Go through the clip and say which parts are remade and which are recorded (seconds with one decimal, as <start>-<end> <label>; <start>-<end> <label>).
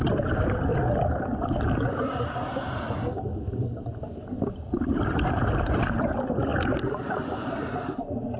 0.0-8.4 remade